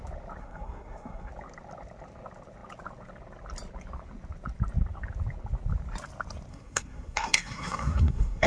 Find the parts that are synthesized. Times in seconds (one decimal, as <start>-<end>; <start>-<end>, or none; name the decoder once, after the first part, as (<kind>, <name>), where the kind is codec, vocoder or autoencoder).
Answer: 0.4-1.3 (codec, SNAC); 6.5-8.5